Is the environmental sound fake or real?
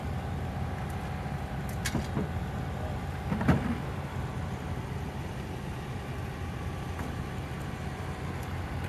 real